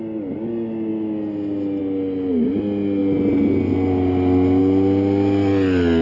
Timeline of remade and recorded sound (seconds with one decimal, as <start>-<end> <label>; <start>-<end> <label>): 0.0-6.0 recorded